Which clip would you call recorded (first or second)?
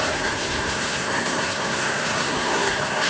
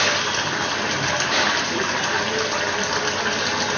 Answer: second